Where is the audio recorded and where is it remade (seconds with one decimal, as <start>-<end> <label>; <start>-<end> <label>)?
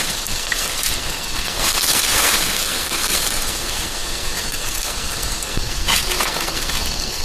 0.0-7.2 remade